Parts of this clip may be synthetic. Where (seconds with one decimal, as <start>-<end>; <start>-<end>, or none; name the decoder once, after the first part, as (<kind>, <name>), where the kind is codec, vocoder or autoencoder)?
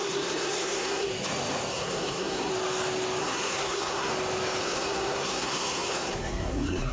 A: 0.0-1.1 (codec, SNAC); 1.7-2.5; 3.2-4.1; 4.6-6.9